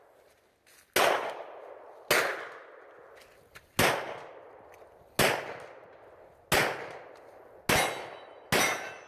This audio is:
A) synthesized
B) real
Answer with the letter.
B